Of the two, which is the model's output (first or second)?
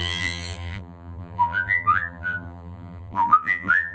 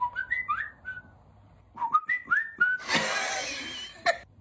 first